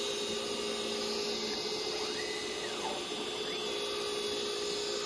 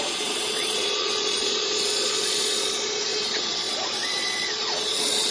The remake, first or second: second